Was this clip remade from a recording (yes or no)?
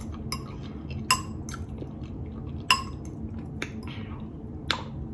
no